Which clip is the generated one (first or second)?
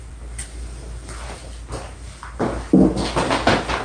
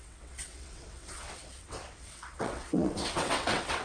second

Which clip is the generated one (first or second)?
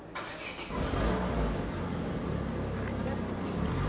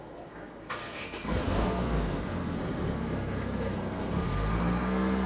second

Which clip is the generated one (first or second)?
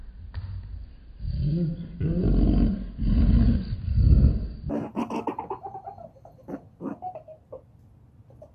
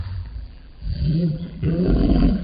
second